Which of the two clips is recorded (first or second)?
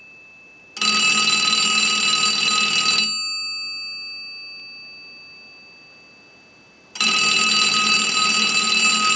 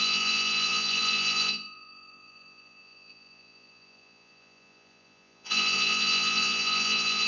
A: first